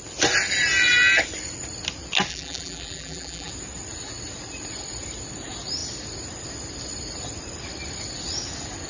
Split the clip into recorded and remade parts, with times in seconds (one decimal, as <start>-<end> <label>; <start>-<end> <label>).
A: 0.0-2.3 recorded; 2.3-3.5 remade; 3.5-8.9 recorded